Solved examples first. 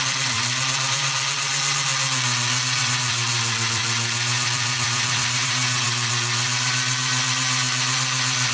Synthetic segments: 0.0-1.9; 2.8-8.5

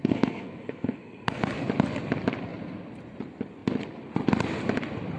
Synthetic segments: 0.0-1.4

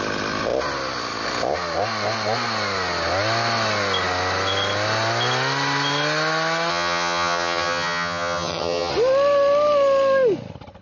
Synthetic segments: 6.7-8.9

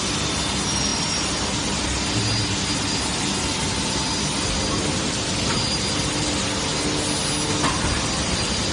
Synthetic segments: none

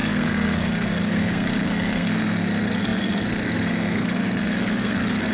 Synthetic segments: 0.0-5.3

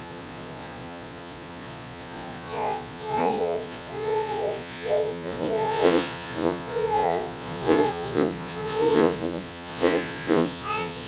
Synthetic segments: 0.0-11.1